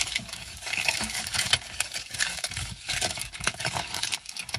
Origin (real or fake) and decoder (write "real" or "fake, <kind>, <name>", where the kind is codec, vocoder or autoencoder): fake, codec, DAC